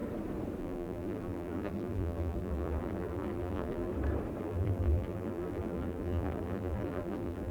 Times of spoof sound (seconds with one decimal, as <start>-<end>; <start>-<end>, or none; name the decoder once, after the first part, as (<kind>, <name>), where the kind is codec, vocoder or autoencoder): 0.6-3.9 (vocoder, BigVGAN v2); 4.4-7.5